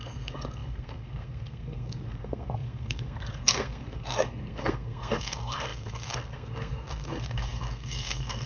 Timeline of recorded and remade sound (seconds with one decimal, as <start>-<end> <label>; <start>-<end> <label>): 0.0-8.5 remade